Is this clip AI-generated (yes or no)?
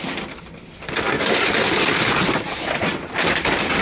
yes